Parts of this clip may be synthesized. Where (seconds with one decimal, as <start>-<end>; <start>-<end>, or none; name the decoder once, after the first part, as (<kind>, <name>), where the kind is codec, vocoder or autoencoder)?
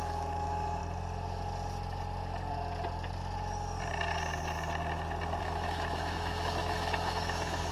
0.0-0.8 (autoencoder, DAC-VAE); 5.4-7.7